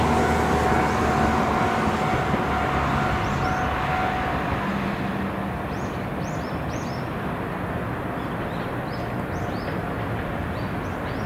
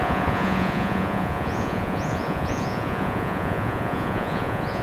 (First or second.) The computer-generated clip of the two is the second